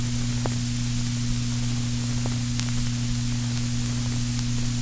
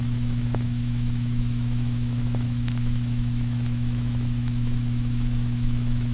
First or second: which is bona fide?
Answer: first